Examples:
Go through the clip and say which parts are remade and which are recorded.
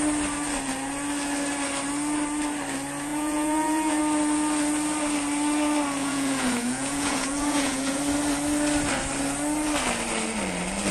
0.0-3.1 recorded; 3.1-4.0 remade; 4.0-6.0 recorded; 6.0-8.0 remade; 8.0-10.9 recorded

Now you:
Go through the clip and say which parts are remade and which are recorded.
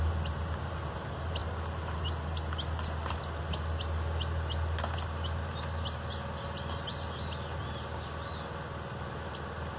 0.0-9.8 recorded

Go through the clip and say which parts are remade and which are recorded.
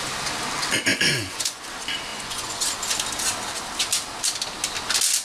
0.0-0.9 recorded; 0.9-1.6 remade; 1.6-2.1 recorded; 2.1-2.6 remade; 2.6-5.2 recorded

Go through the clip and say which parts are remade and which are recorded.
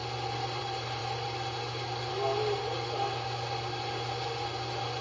0.0-5.0 recorded